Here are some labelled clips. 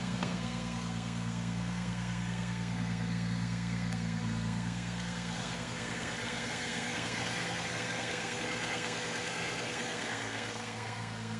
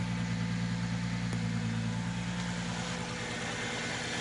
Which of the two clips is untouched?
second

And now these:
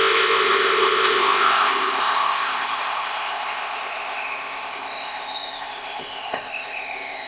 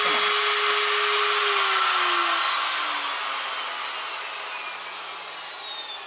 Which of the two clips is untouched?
second